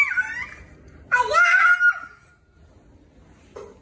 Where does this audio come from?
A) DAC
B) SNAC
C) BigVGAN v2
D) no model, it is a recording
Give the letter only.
D